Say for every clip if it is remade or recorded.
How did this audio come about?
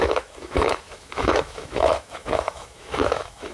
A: remade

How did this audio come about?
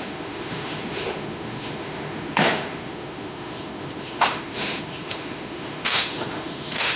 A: remade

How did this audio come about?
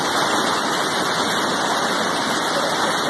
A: recorded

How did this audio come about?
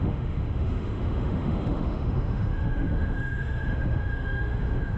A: remade